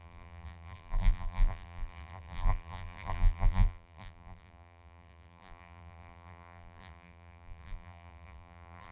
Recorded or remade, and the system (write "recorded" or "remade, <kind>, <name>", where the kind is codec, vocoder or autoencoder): remade, vocoder, BigVGAN v2